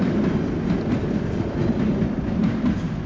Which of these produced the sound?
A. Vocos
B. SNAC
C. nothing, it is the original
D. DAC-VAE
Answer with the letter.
C